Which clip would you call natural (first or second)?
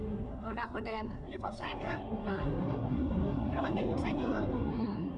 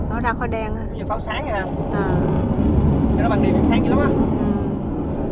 second